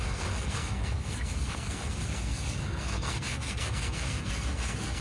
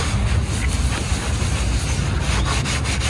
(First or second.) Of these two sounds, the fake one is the first